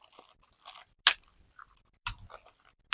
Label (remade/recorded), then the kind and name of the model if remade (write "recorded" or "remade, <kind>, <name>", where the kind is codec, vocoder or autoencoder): recorded